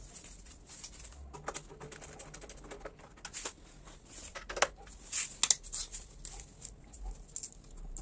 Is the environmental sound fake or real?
real